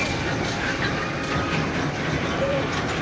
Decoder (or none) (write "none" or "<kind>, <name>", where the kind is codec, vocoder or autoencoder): none